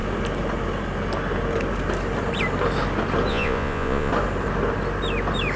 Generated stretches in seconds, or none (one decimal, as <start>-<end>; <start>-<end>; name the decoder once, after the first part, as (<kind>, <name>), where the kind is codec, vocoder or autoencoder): 3.3-4.1 (vocoder, Vocos)